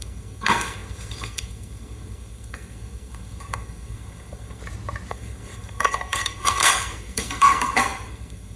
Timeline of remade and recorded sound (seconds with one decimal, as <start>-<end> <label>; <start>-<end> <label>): 0.0-4.6 remade; 4.6-5.1 recorded; 5.1-8.6 remade